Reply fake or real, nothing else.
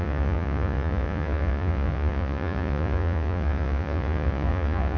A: fake